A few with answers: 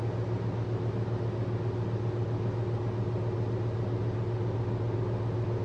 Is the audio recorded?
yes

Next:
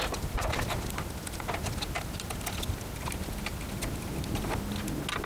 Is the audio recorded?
yes